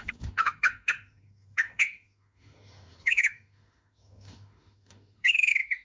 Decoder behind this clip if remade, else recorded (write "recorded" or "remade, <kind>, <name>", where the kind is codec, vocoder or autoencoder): remade, autoencoder, DAC-VAE